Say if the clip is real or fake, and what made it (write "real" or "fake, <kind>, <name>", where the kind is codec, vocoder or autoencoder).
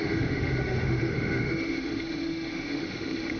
fake, autoencoder, DAC-VAE